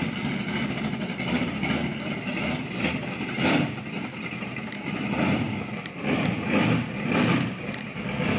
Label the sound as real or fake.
real